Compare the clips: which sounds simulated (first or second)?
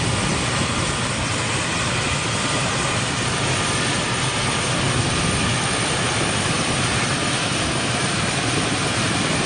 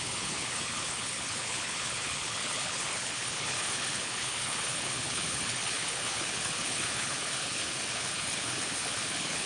second